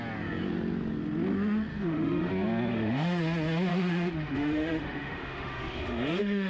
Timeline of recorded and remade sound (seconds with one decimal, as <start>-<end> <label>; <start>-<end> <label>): 0.0-1.7 recorded; 1.7-2.3 remade; 2.3-2.7 recorded; 2.7-3.2 remade; 3.2-3.7 recorded; 3.7-6.5 remade